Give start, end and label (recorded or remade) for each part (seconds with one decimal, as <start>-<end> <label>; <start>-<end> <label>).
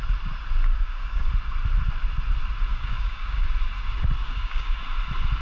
0.0-0.7 recorded; 0.7-1.3 remade; 1.3-2.7 recorded; 2.7-3.4 remade; 3.4-4.2 recorded; 4.2-4.8 remade; 4.8-5.4 recorded